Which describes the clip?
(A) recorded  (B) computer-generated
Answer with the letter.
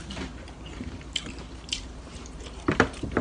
B